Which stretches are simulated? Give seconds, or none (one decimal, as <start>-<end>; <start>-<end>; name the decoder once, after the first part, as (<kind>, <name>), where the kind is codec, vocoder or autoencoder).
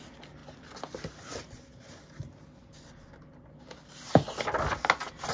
none